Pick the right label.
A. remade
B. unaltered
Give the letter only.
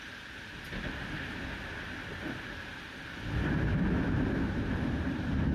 B